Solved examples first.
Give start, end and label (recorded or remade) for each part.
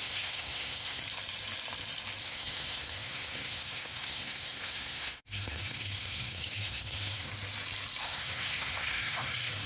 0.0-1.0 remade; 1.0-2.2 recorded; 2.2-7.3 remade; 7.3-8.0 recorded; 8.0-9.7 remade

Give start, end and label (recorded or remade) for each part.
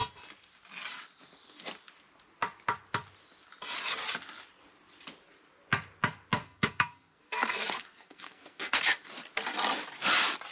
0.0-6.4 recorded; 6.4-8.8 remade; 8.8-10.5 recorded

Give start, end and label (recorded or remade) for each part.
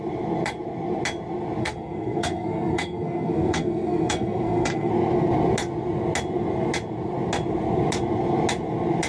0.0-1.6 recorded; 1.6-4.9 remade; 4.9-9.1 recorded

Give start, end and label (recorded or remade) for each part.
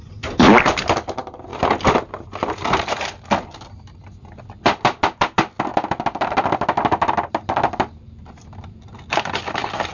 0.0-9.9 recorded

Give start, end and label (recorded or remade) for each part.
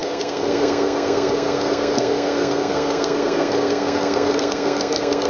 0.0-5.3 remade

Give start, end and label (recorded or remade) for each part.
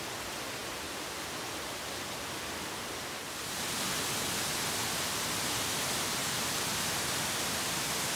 0.0-8.2 recorded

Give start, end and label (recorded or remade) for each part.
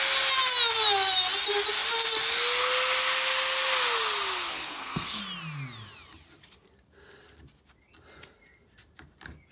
0.0-4.6 recorded; 4.6-5.2 remade; 5.2-9.5 recorded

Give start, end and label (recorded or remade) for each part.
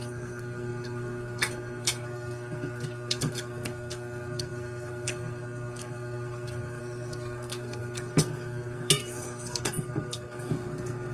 0.0-11.1 remade